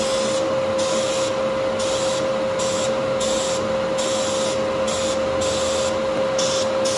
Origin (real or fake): real